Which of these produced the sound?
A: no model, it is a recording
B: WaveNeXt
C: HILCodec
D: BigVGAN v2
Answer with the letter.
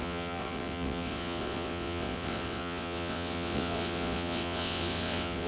B